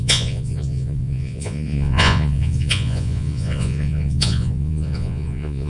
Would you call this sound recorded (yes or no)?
no